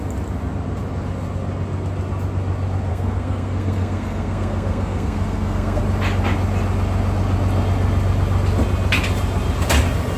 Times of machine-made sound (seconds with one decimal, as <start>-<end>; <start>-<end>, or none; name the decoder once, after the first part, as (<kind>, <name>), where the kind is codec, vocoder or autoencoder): 2.9-5.8 (codec, SNAC)